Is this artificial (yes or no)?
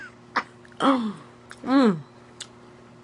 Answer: no